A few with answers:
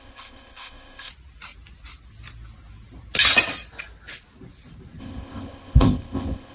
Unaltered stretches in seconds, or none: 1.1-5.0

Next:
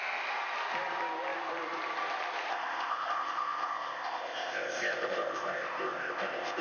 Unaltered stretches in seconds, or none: 0.0-2.5

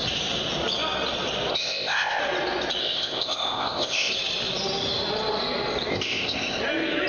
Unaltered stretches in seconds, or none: 0.0-1.5; 2.2-2.8; 4.1-5.9; 6.6-7.1

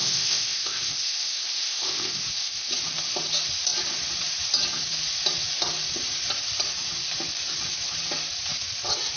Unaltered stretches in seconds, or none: 2.7-9.2

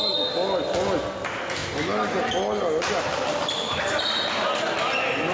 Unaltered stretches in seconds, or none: 0.0-5.3